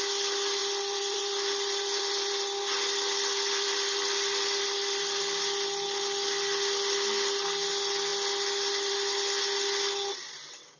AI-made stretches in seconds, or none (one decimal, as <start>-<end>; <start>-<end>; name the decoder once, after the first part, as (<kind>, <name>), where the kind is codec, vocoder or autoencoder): 0.6-5.2 (vocoder, BigVGAN v2)